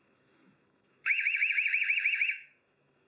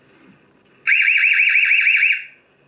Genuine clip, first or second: second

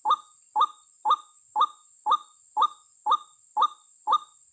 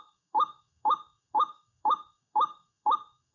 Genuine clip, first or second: first